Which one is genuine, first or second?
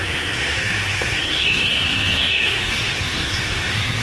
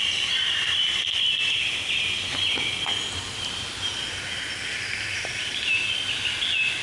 second